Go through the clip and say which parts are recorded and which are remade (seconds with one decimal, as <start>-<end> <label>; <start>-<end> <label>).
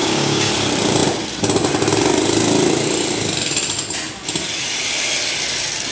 0.0-0.5 remade; 0.5-5.9 recorded